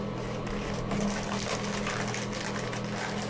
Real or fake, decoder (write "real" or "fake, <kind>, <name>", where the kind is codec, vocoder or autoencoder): real